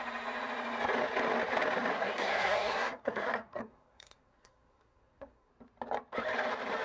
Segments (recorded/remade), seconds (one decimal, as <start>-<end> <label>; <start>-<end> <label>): 0.0-1.9 recorded; 1.9-5.5 remade; 5.5-6.8 recorded